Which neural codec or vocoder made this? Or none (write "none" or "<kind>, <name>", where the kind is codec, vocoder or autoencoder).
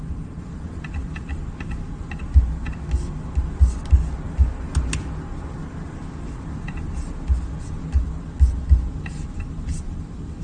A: none